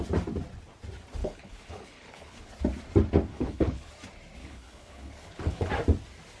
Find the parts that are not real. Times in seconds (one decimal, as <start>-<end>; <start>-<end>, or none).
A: 1.2-2.5; 3.3-3.9; 4.4-5.7